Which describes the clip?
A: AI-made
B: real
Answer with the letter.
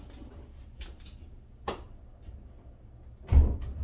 B